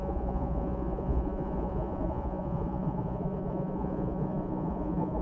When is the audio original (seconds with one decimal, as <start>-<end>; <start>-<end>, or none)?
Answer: none